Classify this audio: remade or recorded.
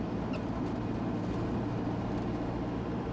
recorded